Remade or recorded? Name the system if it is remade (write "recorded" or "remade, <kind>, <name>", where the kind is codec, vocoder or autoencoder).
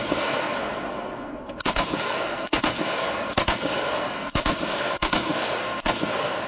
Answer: remade, codec, SNAC